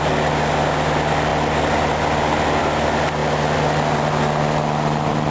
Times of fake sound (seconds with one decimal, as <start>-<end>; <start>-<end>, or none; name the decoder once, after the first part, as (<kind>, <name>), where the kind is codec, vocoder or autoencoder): none

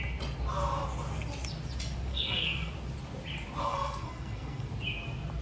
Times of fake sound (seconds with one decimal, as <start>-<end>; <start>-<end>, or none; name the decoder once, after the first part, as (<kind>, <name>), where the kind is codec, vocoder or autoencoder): 2.1-2.7 (codec, SNAC); 3.6-4.7

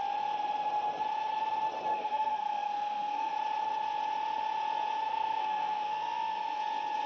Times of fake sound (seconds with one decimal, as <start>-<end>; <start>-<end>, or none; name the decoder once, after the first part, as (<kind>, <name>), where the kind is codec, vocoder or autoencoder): 1.9-3.3 (codec, SNAC); 5.1-6.6